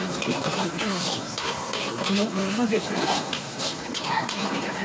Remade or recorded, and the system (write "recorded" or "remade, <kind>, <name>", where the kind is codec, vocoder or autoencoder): remade, codec, SNAC